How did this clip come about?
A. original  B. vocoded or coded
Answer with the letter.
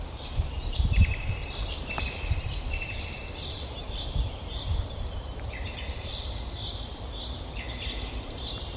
B